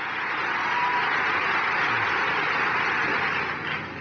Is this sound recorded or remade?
recorded